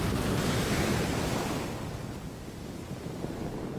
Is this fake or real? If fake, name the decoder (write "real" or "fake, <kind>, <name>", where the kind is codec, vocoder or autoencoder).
real